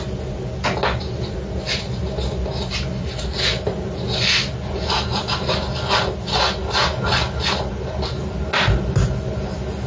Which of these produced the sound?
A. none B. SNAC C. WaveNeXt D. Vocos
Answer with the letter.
A